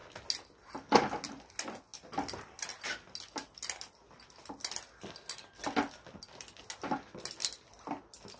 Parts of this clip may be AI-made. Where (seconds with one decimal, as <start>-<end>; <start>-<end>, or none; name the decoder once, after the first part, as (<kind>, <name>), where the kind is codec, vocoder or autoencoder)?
none